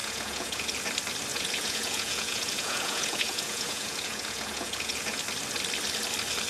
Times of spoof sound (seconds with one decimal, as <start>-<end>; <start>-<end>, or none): 0.0-0.9; 1.3-5.2